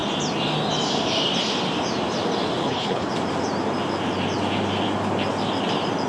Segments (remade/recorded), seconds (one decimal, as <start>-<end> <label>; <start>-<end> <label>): 0.0-2.6 recorded; 2.6-3.1 remade; 3.1-6.1 recorded